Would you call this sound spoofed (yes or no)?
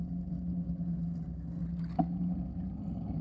no